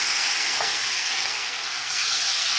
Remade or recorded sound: remade